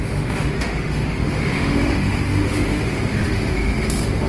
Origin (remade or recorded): remade